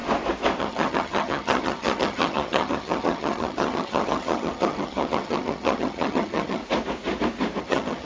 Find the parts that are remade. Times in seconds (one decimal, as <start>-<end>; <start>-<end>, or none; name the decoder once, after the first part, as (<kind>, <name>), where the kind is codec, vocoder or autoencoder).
0.6-6.6 (vocoder, HiFi-GAN); 7.6-8.1